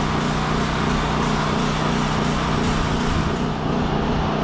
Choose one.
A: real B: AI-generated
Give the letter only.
A